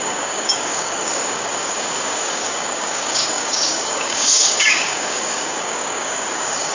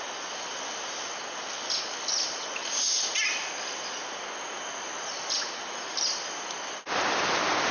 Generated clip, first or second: first